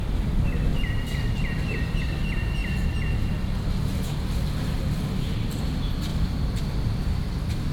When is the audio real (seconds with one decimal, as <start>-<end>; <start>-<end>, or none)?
0.0-0.7; 2.0-6.1; 6.6-7.7